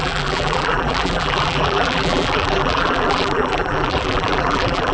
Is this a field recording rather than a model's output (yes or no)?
no